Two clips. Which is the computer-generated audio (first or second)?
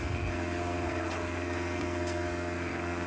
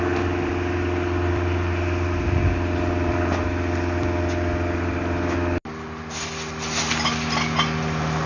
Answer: first